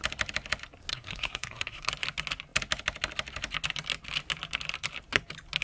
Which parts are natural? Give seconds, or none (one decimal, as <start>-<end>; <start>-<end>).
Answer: 0.0-0.9; 1.9-5.6